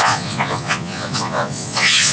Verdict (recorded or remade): remade